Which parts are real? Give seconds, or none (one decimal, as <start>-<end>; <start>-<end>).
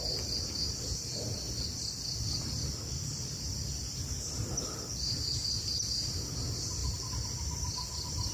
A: 0.0-8.3